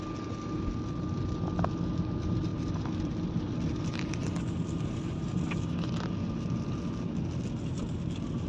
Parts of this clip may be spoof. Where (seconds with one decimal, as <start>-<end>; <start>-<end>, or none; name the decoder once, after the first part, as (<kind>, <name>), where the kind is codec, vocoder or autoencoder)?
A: none